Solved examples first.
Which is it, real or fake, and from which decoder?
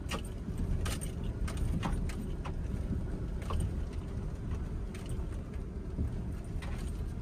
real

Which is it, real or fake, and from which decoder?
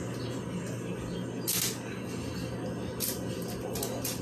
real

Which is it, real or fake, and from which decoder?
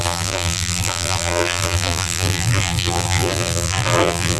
fake, vocoder, BigVGAN v2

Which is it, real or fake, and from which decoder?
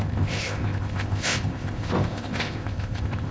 fake, codec, ZipCodec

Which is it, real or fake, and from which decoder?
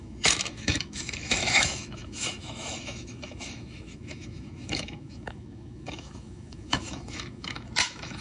fake, autoencoder, DAC-VAE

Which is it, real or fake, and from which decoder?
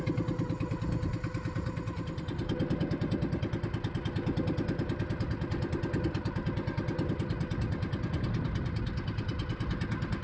real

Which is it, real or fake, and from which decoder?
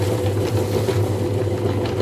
real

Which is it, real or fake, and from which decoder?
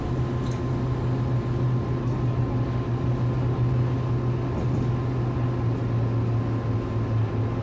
real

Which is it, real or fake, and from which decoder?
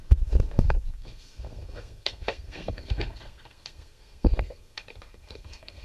fake, codec, SNAC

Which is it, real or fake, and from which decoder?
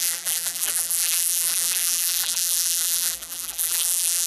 fake, vocoder, BigVGAN v2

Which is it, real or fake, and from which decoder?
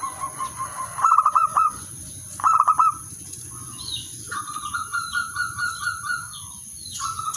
fake, vocoder, Vocos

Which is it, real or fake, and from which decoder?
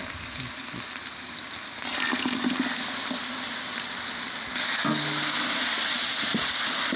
real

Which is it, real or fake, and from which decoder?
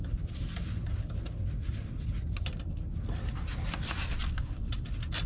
real